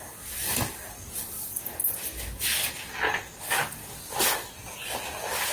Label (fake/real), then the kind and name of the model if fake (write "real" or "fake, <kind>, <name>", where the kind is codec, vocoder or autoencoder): real